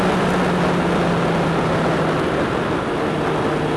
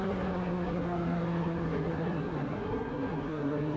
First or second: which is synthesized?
second